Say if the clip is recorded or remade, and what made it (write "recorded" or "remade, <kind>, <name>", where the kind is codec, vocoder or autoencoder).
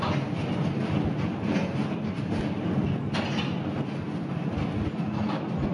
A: recorded